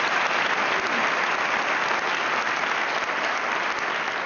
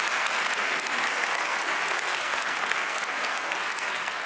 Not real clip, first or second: second